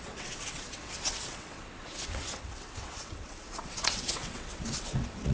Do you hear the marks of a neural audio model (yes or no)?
yes